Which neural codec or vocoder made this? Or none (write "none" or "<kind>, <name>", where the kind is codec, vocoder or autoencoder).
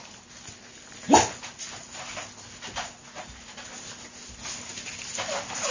none